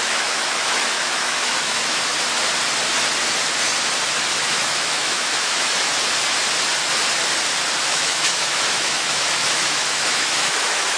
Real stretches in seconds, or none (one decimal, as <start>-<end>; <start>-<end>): 2.1-4.3; 5.9-7.9